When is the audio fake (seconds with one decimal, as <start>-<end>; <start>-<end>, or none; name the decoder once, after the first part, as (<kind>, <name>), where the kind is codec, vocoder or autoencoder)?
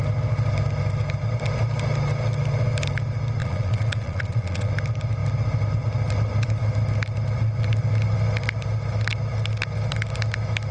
3.4-4.7 (vocoder, Vocos)